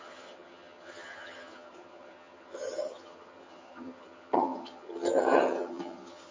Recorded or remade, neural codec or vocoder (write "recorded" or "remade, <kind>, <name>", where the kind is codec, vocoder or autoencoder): remade, vocoder, HiFi-GAN